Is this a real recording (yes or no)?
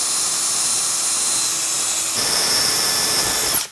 yes